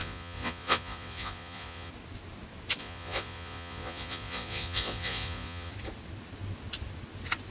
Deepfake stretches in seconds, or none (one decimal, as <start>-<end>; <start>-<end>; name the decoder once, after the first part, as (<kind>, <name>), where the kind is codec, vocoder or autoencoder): 0.0-1.9 (vocoder, Vocos); 2.8-5.7